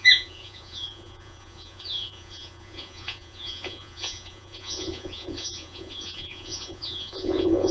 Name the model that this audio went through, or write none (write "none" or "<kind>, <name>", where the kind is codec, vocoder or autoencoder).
vocoder, Vocos